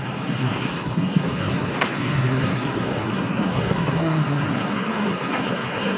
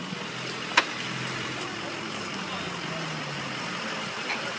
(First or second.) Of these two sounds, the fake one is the first